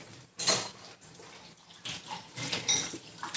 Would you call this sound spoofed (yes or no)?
no